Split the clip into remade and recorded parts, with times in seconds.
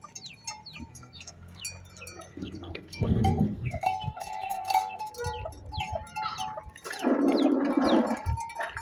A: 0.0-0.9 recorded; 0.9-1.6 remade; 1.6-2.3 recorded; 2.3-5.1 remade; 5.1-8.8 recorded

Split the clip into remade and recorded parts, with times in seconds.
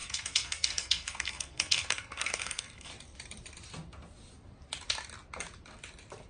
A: 0.0-2.9 remade; 2.9-6.3 recorded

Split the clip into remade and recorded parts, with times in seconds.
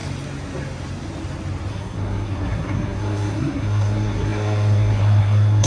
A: 0.0-1.7 recorded; 1.7-5.7 remade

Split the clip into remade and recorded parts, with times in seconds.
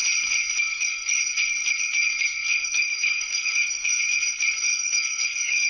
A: 0.0-0.6 recorded; 0.6-1.2 remade; 1.2-2.2 recorded; 2.2-4.0 remade; 4.0-4.6 recorded; 4.6-5.7 remade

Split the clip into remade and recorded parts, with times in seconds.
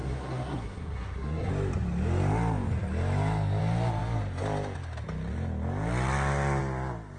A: 0.0-1.5 remade; 1.5-7.2 recorded